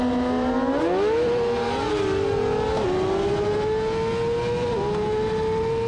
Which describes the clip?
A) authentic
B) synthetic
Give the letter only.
A